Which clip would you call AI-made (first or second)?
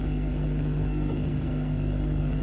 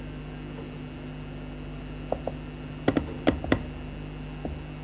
first